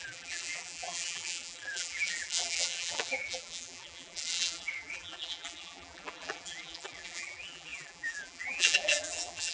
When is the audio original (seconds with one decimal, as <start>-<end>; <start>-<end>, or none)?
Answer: none